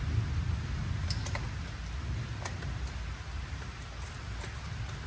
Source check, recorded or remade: recorded